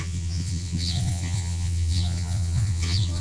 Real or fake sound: fake